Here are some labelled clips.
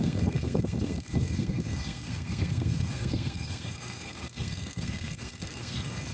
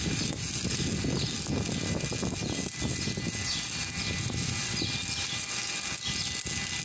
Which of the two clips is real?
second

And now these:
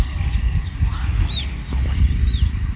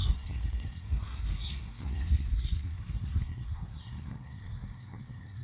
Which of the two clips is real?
first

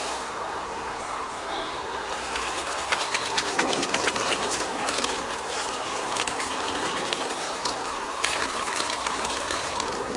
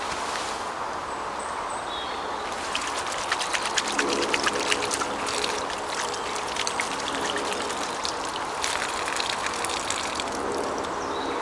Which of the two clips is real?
second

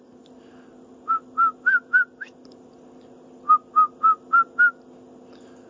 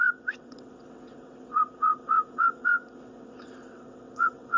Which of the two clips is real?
first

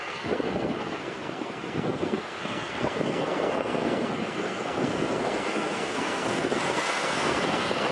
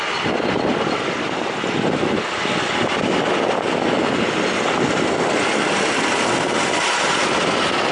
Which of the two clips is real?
second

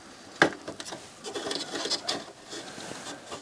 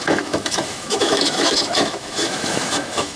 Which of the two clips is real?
first